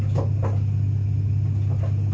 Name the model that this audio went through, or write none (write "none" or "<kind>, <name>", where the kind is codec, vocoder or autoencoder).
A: none